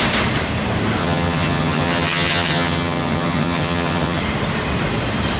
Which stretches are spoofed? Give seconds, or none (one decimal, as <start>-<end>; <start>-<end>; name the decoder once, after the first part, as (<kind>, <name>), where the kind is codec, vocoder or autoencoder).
1.0-4.2 (vocoder, HiFi-GAN)